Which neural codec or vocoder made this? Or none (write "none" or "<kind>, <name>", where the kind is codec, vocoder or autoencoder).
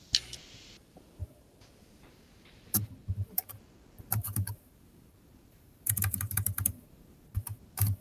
vocoder, BigVGAN v2